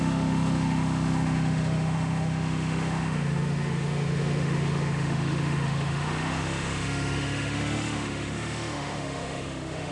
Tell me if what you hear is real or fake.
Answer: fake